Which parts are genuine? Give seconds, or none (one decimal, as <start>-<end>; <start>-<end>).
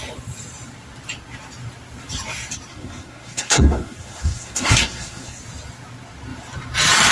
0.0-2.7; 5.4-7.1